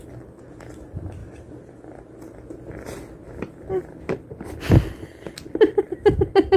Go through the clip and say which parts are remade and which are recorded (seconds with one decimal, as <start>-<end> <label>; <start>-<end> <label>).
0.0-6.6 recorded